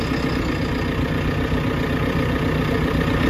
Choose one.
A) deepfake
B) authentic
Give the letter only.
B